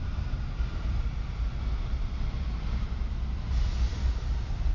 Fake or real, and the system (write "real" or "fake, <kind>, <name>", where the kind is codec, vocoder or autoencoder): real